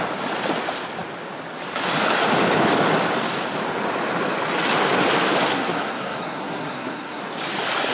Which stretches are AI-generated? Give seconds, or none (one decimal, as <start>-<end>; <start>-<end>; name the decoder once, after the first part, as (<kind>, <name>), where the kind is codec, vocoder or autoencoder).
5.5-7.2 (codec, SNAC)